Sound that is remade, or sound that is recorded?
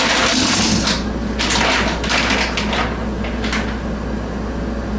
recorded